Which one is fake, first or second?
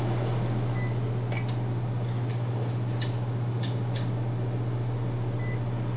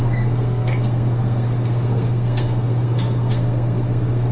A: second